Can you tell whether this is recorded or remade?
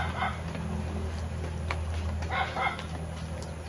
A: recorded